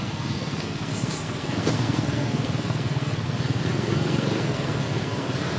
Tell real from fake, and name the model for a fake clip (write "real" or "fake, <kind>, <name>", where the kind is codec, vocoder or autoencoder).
fake, codec, SNAC